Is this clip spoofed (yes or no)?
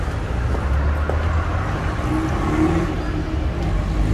no